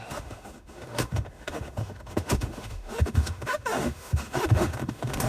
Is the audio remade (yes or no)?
yes